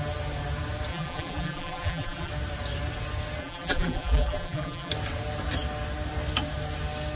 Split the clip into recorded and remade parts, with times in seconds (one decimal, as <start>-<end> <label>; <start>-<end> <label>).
0.0-0.9 recorded; 0.9-2.3 remade; 2.3-3.4 recorded; 3.4-4.9 remade; 4.9-7.2 recorded

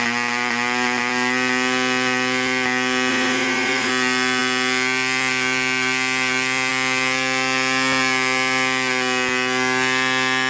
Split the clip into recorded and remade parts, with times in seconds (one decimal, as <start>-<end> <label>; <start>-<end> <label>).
0.0-3.1 recorded; 3.1-3.9 remade; 3.9-10.5 recorded